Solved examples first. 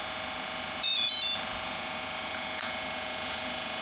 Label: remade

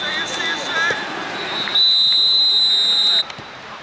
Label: recorded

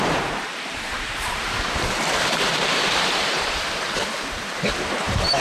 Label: remade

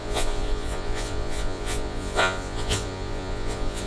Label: remade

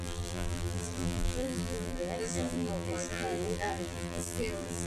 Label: remade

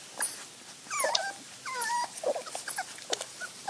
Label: recorded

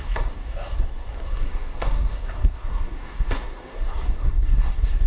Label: remade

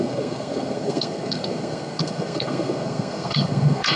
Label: remade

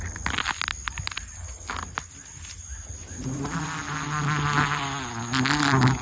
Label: recorded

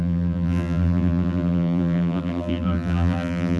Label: remade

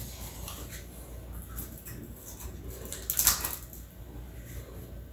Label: recorded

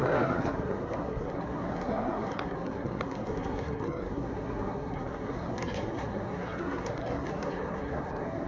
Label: remade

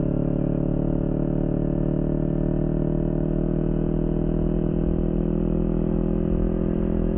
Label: recorded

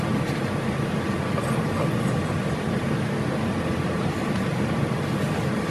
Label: recorded